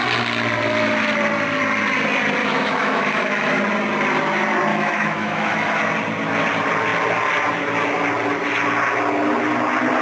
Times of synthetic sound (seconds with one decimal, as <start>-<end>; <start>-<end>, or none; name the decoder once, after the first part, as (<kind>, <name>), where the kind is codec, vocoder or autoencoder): 2.4-3.6 (autoencoder, DAC-VAE); 4.7-5.8